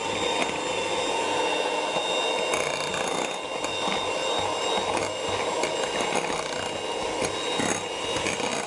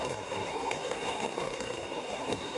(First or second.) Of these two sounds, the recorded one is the first